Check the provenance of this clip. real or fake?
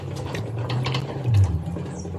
real